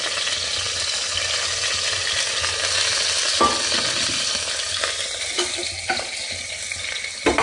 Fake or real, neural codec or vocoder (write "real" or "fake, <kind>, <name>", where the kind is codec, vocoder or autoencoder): real